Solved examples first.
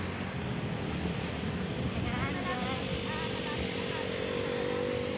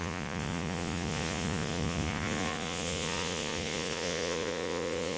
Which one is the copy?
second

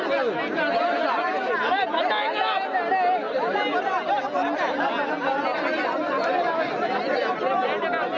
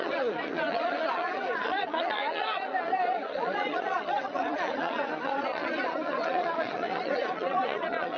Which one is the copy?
second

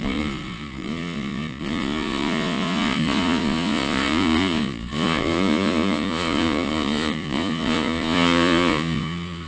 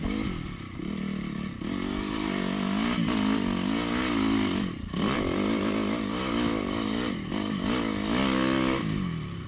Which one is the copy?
first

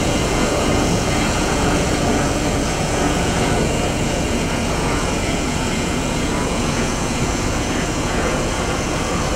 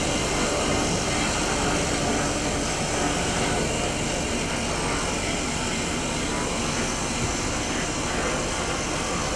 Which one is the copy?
first